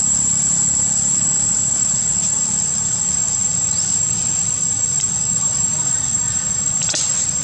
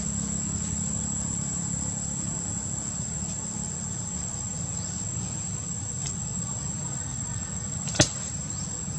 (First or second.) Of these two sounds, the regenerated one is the first